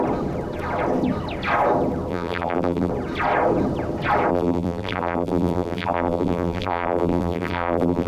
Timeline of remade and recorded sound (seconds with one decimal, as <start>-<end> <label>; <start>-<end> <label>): 0.0-2.1 recorded; 2.1-2.9 remade; 2.9-4.3 recorded; 4.3-8.1 remade